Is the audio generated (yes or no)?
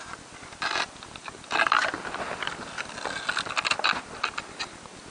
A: no